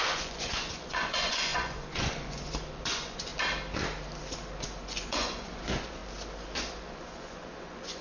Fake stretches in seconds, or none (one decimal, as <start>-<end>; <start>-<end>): 0.0-3.3; 4.8-6.0; 6.6-8.0